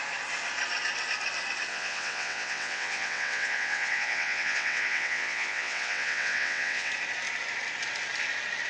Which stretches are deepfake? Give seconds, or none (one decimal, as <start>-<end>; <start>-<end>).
1.7-6.9